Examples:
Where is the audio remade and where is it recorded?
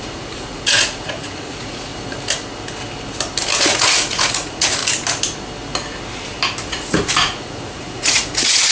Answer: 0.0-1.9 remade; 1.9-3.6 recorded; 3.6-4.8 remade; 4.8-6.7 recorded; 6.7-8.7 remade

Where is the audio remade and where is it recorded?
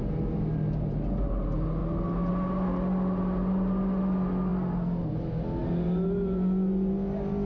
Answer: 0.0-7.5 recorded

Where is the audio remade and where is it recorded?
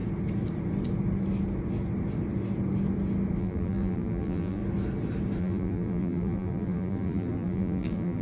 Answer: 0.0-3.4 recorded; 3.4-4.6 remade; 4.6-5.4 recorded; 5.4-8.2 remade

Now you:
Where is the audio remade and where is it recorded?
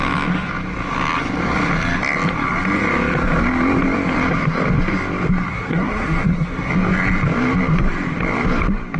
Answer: 0.0-5.5 recorded; 5.5-6.7 remade; 6.7-9.0 recorded